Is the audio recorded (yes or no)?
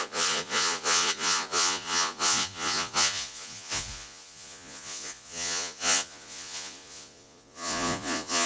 no